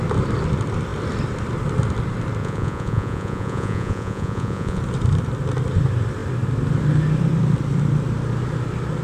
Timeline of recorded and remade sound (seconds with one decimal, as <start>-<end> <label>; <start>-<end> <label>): 0.0-2.4 recorded; 2.4-4.8 remade; 4.8-9.0 recorded